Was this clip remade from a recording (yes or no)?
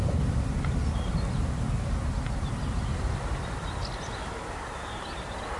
no